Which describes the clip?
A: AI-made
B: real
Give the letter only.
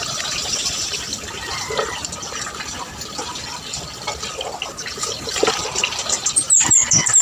B